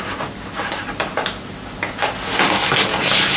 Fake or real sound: real